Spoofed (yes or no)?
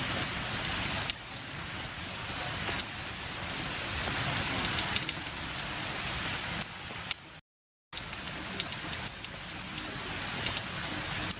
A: no